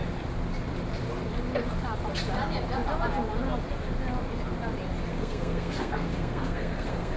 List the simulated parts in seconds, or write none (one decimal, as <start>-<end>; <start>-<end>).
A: 5.1-7.2